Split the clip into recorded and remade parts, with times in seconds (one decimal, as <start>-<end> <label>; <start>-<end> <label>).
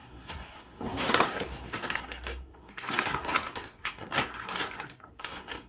0.0-5.7 remade